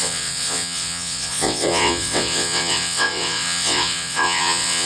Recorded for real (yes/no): no